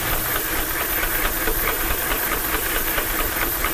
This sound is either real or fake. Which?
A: fake